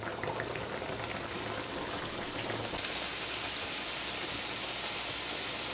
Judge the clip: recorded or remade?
recorded